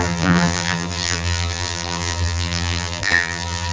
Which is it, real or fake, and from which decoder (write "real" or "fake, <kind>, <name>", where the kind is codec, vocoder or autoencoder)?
fake, vocoder, BigVGAN v2